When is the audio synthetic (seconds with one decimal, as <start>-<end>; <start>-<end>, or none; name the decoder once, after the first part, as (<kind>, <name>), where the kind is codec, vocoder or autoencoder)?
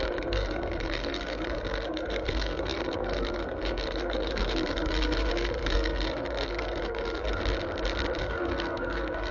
0.0-7.4 (codec, SNAC); 8.2-9.3